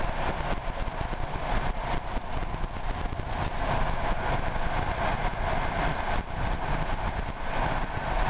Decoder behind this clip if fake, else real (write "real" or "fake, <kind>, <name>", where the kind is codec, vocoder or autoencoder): real